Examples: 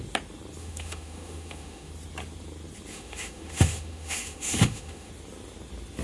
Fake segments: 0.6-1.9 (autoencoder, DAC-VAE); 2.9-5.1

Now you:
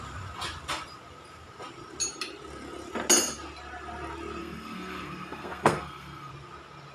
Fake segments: 4.4-6.3 (codec, SNAC)